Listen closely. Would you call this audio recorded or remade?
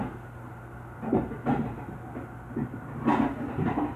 recorded